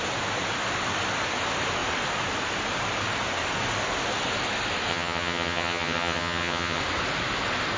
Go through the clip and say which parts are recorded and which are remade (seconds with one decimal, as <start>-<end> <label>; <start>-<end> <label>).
0.0-4.9 recorded; 4.9-6.8 remade; 6.8-7.8 recorded